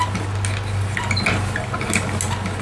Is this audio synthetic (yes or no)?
no